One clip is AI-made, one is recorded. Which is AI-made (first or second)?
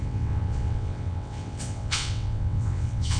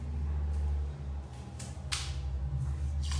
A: first